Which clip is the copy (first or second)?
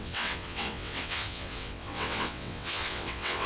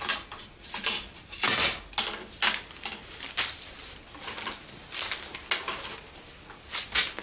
first